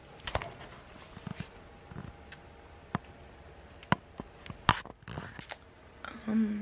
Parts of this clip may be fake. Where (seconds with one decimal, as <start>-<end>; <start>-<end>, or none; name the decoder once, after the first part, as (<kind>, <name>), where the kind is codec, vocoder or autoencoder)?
none

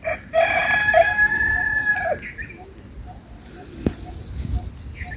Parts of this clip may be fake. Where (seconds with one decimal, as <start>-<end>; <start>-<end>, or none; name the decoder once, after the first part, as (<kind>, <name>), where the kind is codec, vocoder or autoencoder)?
none

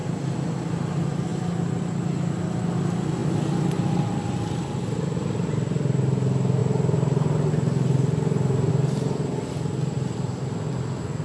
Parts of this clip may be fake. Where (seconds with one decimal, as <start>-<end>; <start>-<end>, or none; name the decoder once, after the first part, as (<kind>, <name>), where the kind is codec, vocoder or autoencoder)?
none

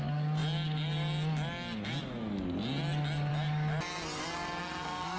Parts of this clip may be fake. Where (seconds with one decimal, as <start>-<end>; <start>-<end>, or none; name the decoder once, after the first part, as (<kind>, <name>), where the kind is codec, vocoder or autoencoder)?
4.6-5.2 (codec, SNAC)

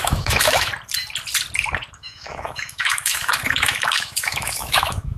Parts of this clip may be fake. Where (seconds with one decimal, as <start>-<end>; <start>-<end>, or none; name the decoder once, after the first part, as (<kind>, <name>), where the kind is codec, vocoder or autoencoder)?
0.0-0.7 (autoencoder, DAC-VAE); 1.9-5.2

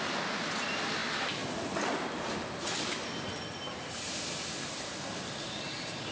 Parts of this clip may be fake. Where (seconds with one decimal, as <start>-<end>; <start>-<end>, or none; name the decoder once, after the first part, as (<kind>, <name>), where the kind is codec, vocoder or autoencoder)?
none